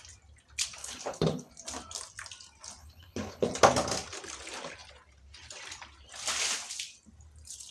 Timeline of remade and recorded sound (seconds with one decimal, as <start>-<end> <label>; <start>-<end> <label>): 0.0-0.8 recorded; 0.8-1.5 remade; 1.5-2.8 recorded; 2.8-3.5 remade; 3.5-7.7 recorded